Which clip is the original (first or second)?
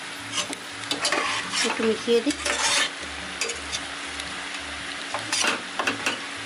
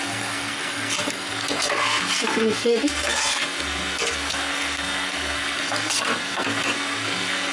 first